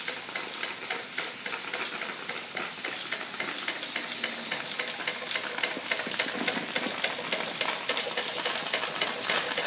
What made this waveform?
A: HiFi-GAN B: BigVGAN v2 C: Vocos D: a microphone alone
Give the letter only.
D